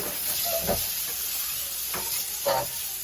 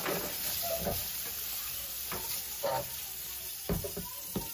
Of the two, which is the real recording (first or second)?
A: first